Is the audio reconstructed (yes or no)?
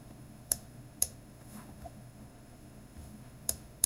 yes